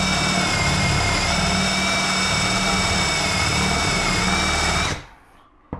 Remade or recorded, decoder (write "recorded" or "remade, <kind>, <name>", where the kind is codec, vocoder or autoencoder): recorded